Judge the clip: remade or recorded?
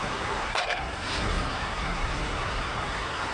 remade